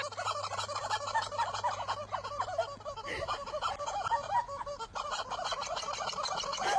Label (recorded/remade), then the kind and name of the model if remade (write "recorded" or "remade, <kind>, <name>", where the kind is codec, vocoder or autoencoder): recorded